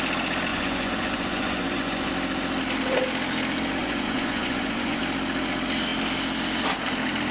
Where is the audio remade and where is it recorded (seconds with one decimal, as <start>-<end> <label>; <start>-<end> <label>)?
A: 0.0-0.5 recorded; 0.5-2.1 remade; 2.1-3.8 recorded; 3.8-5.0 remade; 5.0-7.3 recorded